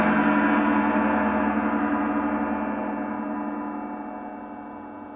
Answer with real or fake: real